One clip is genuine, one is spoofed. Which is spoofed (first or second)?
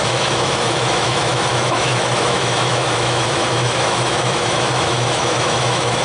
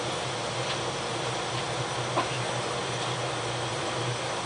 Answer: first